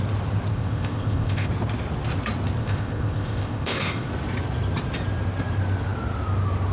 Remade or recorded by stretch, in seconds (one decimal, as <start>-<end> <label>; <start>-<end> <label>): 0.0-0.5 recorded; 0.5-1.5 remade; 1.5-2.6 recorded; 2.6-4.1 remade; 4.1-6.7 recorded

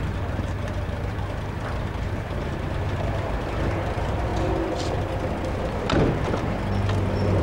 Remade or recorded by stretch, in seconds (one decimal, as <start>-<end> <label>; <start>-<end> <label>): 0.0-4.3 remade; 4.3-7.4 recorded

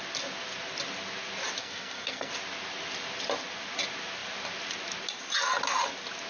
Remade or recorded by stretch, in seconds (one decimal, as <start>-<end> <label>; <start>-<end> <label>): 0.0-1.6 recorded; 1.6-2.3 remade; 2.3-6.3 recorded